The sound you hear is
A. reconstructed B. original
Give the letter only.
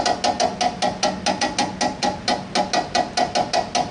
B